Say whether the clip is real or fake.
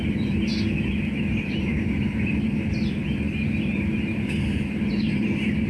real